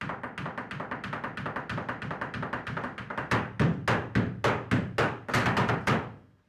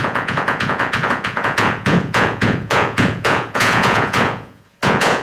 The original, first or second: first